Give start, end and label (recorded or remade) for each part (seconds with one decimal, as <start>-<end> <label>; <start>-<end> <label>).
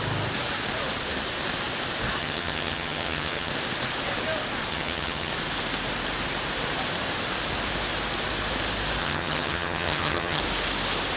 0.0-2.2 recorded; 2.2-3.5 remade; 3.5-4.7 recorded; 4.7-5.3 remade; 5.3-9.0 recorded; 9.0-10.4 remade; 10.4-11.2 recorded